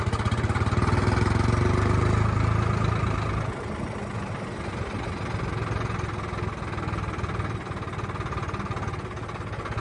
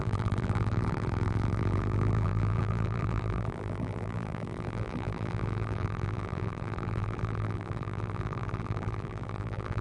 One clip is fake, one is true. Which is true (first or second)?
first